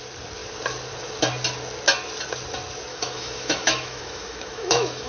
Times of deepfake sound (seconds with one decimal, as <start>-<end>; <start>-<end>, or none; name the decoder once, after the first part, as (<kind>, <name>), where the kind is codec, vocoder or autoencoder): 2.9-5.1 (autoencoder, DAC-VAE)